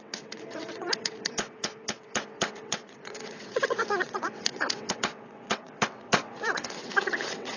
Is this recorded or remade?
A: remade